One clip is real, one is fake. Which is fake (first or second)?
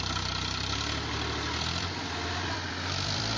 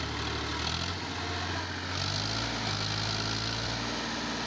first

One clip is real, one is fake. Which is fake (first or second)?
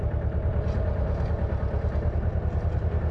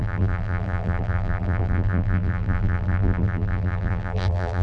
second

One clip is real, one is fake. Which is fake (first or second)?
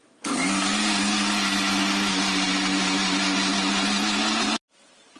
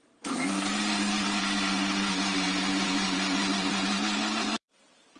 second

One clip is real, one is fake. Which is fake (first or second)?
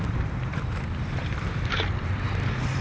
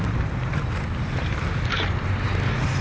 first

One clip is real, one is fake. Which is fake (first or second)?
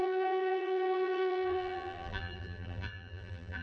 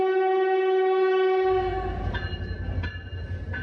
first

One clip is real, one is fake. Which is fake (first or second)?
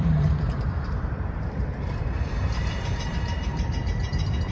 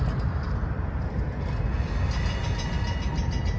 first